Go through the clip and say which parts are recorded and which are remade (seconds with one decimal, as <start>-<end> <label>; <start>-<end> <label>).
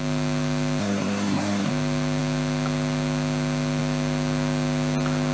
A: 0.0-0.8 recorded; 0.8-1.7 remade; 1.7-5.3 recorded